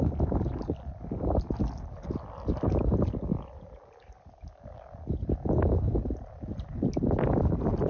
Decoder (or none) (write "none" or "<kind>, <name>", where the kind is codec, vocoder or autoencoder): none